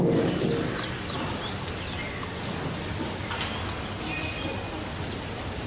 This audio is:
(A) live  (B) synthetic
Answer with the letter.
A